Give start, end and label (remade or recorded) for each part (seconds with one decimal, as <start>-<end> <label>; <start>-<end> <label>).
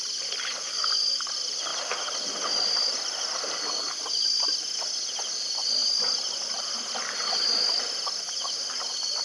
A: 0.0-9.2 recorded